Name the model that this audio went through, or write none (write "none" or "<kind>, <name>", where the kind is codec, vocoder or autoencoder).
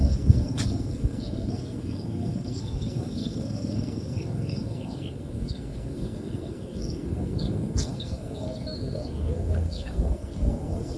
codec, SNAC